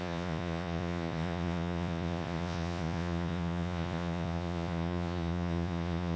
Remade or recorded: remade